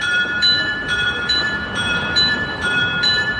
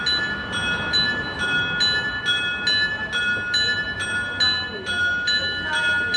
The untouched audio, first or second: second